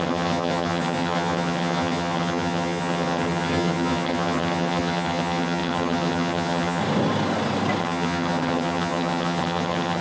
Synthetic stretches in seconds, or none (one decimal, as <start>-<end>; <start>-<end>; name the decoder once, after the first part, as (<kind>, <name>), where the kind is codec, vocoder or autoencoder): 0.0-6.8 (vocoder, HiFi-GAN); 7.8-10.0